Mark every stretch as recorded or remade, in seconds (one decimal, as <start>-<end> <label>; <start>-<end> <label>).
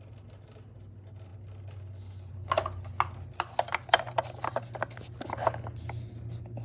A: 0.0-6.6 recorded